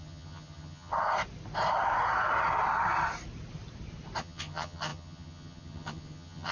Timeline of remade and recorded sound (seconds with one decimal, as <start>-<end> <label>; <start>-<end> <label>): 0.0-0.9 remade; 0.9-4.2 recorded; 4.2-6.5 remade